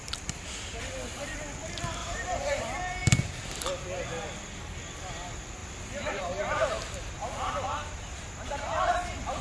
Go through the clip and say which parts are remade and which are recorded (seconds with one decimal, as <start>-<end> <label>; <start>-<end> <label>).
0.0-2.0 recorded; 2.0-2.6 remade; 2.6-9.4 recorded